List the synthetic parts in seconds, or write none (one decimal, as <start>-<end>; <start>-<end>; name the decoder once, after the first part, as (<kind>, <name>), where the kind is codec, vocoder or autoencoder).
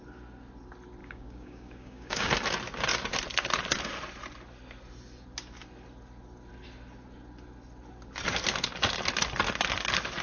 1.0-2.3 (codec, DAC)